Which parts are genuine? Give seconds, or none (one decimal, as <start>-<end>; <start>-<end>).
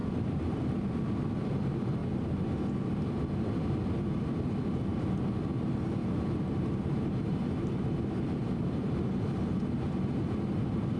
0.6-2.0; 2.6-6.0; 8.7-11.0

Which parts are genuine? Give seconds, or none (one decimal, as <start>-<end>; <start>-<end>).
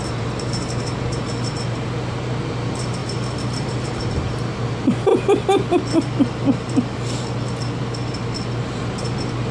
5.1-8.8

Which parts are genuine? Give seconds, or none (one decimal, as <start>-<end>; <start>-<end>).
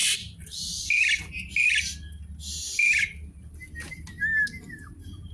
1.8-5.3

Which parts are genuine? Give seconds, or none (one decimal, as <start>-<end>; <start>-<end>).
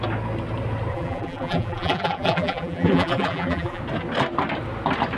0.0-0.9; 3.8-5.2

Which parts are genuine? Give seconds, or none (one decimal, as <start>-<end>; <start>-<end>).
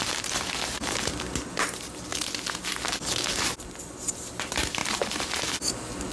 0.0-6.1